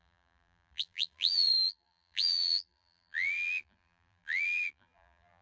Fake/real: fake